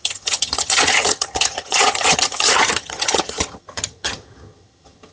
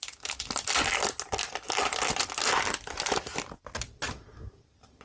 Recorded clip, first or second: second